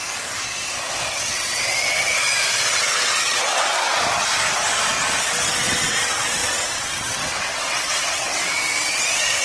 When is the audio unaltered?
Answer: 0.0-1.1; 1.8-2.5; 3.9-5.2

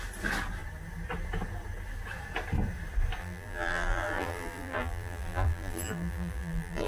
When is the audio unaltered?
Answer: 0.0-3.2

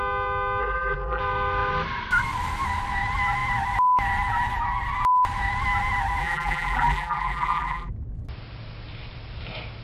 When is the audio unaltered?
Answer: 0.0-0.6; 1.2-6.2; 7.9-9.8

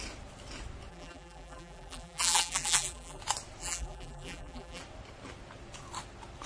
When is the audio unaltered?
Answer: 0.0-0.9; 3.2-3.6; 4.8-6.5

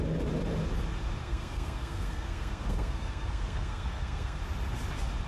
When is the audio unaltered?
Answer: 0.0-1.2; 4.4-5.3